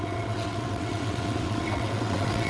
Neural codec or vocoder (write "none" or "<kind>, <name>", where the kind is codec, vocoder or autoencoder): vocoder, WaveNeXt